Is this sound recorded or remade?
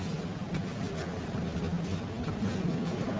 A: recorded